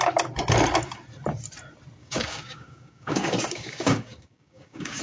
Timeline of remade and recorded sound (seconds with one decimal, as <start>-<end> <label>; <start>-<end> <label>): 0.0-2.0 recorded; 2.0-5.0 remade